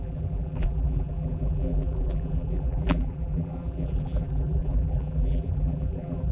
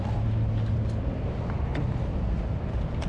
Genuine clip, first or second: second